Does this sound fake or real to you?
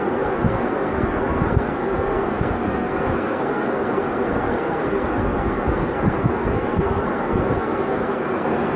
fake